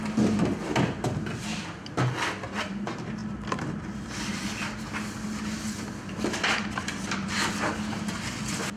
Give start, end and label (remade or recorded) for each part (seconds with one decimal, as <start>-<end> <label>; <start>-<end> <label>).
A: 0.0-8.8 recorded